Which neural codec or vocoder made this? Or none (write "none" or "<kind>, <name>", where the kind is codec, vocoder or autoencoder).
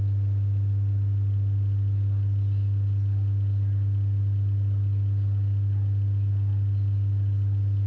none